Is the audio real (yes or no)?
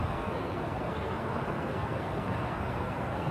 no